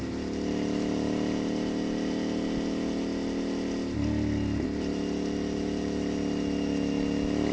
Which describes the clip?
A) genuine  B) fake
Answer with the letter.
A